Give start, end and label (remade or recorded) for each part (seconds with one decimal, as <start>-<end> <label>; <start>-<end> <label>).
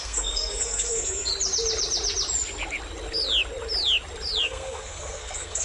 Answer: 0.0-1.3 remade; 1.3-4.4 recorded; 4.4-5.6 remade